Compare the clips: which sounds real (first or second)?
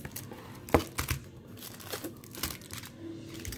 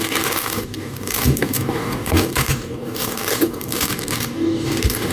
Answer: first